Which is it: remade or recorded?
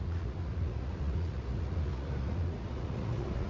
remade